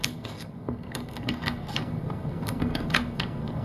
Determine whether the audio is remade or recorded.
remade